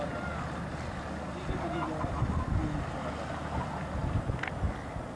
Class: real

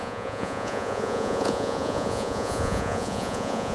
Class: fake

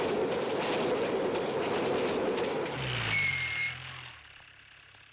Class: real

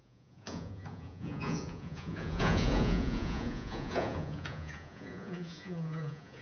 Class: fake